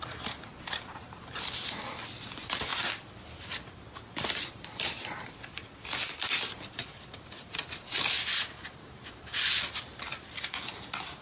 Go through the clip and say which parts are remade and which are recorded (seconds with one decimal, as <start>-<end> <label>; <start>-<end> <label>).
0.0-11.2 recorded